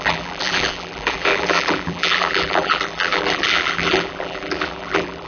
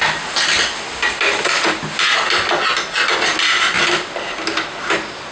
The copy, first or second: first